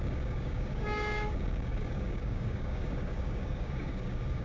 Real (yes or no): no